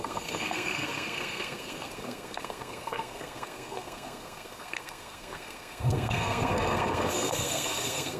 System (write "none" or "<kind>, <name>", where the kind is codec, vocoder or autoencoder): codec, SNAC